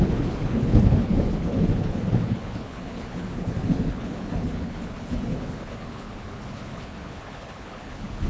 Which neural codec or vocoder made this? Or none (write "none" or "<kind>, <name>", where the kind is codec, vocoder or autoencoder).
codec, HILCodec